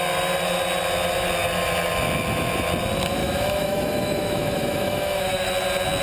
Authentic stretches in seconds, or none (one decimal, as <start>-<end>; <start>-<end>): 0.0-3.2; 5.5-6.0